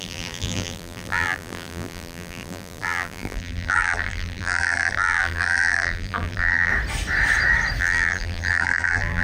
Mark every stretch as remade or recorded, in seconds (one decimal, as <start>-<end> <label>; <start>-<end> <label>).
0.0-6.7 remade; 6.7-7.8 recorded; 7.8-9.2 remade